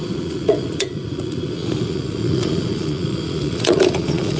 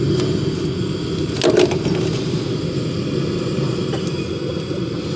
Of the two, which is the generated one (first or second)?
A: first